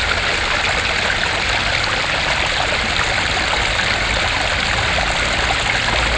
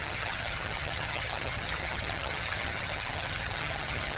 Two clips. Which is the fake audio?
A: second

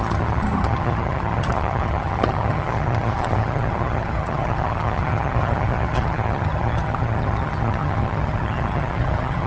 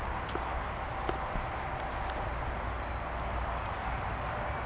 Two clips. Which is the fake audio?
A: first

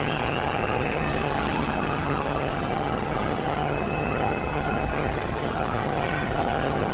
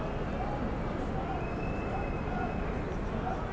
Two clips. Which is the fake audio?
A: first